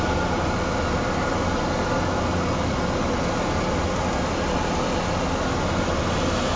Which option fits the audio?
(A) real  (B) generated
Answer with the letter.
A